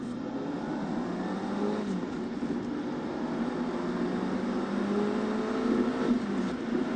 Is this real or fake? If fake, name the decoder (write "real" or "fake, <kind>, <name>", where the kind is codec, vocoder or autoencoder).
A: real